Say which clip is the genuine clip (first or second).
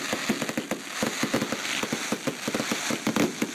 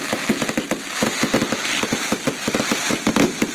first